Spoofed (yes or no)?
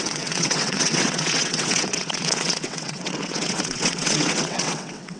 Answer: yes